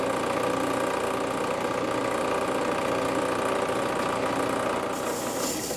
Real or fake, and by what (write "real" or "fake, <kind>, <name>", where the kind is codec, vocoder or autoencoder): real